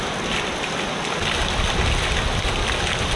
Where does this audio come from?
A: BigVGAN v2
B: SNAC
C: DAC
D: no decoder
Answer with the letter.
D